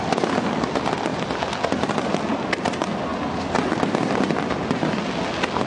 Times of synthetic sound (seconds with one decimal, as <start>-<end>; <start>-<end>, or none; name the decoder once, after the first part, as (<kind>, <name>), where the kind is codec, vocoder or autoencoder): none